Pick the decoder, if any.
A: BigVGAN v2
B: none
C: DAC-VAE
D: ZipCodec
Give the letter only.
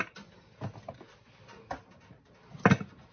B